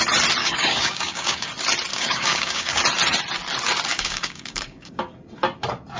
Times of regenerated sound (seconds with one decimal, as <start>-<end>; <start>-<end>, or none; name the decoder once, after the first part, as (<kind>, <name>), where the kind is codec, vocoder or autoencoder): 0.4-1.5 (codec, DAC); 1.9-2.8; 3.9-4.9